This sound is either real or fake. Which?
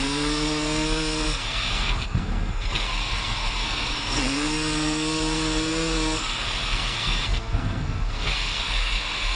fake